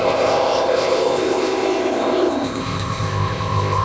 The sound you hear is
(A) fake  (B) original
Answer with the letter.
A